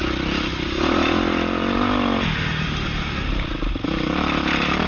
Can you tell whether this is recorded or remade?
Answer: recorded